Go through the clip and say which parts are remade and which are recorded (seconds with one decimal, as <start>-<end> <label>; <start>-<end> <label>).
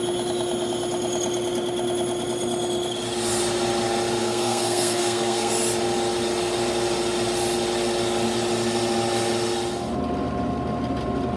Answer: 0.0-4.2 recorded; 4.2-5.5 remade; 5.5-11.4 recorded